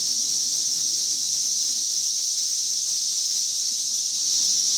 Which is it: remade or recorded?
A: remade